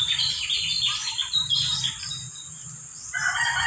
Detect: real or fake real